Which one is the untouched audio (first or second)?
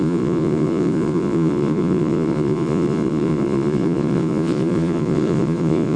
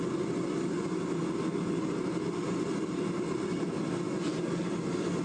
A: second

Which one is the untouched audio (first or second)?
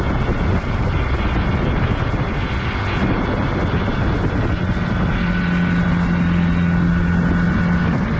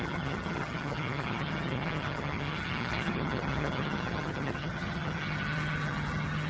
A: first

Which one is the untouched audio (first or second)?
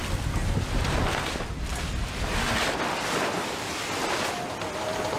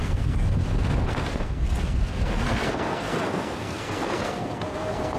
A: first